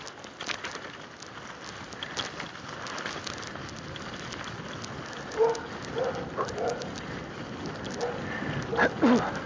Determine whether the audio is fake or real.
real